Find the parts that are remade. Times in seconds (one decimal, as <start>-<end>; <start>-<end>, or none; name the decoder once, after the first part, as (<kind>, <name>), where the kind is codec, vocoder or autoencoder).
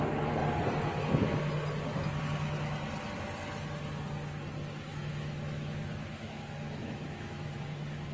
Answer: 4.9-7.6 (autoencoder, DAC-VAE)